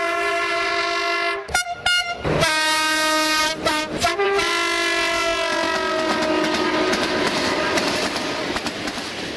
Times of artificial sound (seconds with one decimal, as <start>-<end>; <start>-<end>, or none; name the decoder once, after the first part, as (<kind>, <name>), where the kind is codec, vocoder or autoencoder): 0.0-0.7 (vocoder, BigVGAN v2); 3.4-4.5; 6.7-9.4